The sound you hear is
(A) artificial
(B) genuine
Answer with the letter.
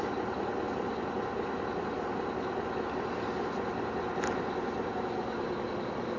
B